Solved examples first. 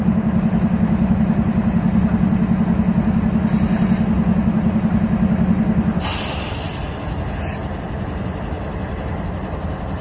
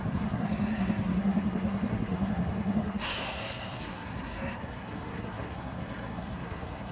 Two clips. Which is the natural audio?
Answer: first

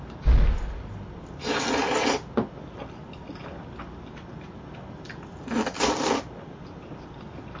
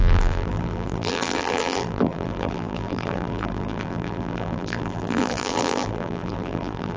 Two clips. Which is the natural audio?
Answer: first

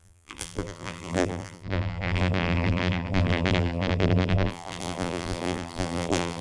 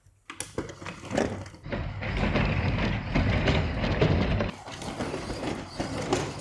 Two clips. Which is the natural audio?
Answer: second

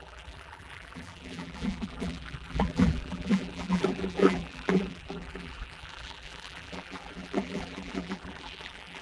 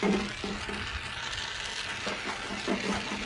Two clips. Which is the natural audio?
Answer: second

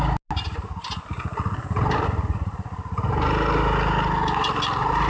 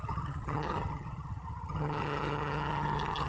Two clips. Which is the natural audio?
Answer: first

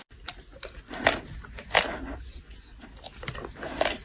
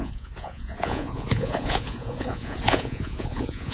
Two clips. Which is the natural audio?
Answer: first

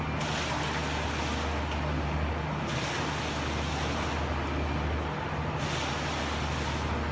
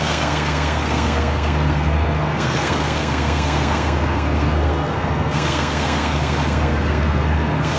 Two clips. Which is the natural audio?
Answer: first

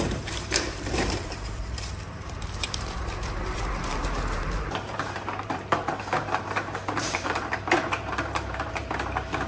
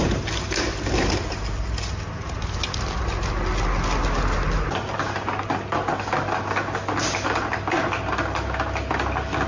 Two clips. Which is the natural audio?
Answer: second